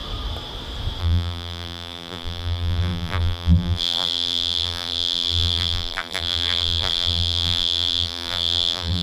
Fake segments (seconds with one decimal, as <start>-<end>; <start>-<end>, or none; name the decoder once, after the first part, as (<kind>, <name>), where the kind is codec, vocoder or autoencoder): 1.0-9.0 (vocoder, BigVGAN v2)